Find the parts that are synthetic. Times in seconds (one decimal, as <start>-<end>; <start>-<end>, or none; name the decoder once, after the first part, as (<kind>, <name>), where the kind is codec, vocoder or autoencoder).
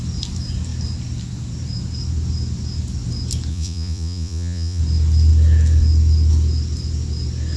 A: 3.5-4.8 (vocoder, Vocos)